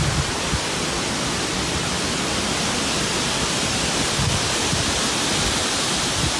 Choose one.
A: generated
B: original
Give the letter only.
B